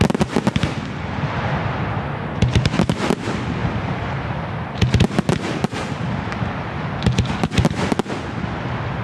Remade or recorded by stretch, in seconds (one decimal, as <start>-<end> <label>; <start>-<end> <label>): 0.0-9.0 recorded